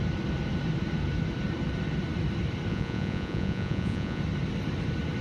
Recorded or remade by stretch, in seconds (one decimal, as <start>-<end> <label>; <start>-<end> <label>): 0.0-2.7 recorded; 2.7-4.2 remade; 4.2-5.2 recorded